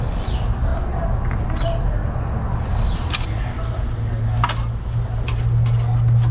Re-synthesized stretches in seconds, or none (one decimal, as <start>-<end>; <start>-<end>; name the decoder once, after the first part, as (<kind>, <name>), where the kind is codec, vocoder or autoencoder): none